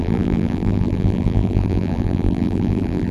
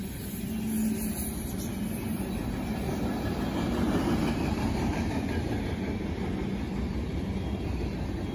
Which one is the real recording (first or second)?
second